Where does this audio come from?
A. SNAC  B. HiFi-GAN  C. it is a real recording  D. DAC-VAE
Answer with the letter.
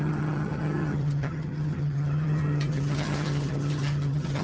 B